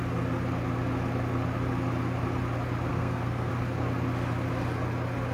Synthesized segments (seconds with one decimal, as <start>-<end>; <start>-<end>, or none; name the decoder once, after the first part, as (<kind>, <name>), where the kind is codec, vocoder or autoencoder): 2.9-3.5 (codec, SNAC)